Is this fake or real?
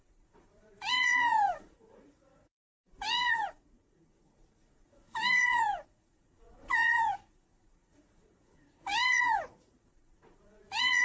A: fake